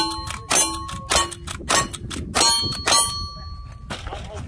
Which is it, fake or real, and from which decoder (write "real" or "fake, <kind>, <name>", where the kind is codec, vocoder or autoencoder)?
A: real